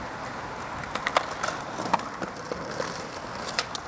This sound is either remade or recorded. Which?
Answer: recorded